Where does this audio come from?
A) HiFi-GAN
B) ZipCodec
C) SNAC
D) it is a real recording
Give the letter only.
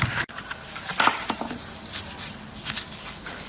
D